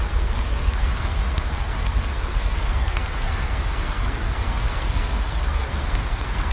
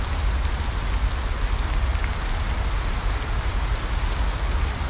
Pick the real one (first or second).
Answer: second